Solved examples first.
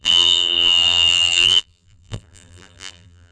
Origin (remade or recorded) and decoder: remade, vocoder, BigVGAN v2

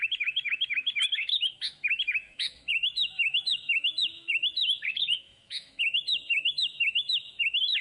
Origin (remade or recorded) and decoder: remade, autoencoder, DAC-VAE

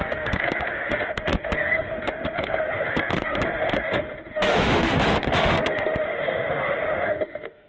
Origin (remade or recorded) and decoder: remade, autoencoder, DAC-VAE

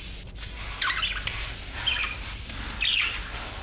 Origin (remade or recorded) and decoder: recorded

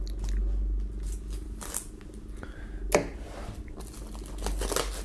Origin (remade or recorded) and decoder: recorded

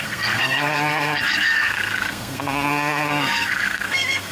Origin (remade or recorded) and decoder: remade, codec, SNAC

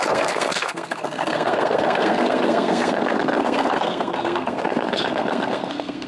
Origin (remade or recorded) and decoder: remade, codec, SNAC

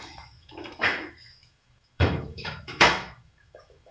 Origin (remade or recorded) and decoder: remade, autoencoder, DAC-VAE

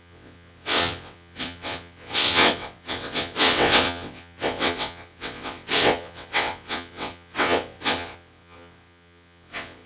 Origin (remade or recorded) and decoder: remade, vocoder, WaveNeXt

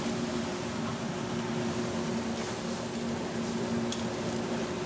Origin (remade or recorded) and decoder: recorded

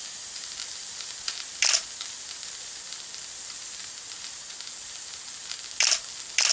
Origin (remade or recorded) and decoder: recorded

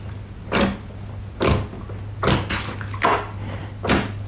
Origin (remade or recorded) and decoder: recorded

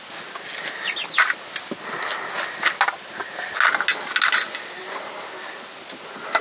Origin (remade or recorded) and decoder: recorded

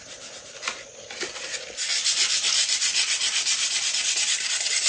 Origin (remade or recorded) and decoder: recorded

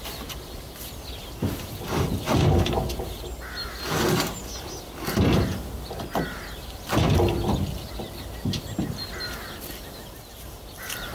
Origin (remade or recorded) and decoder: recorded